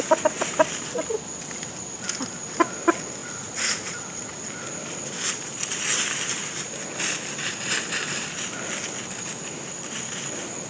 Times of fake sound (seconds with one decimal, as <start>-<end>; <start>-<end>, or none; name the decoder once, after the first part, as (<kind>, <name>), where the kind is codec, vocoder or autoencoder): 3.2-4.4 (vocoder, Vocos)